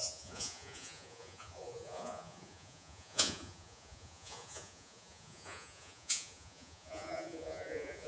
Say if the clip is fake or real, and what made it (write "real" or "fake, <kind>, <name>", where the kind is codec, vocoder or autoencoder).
fake, vocoder, Vocos